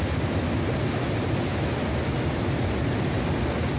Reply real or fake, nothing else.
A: real